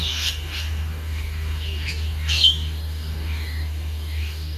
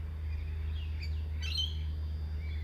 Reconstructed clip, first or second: first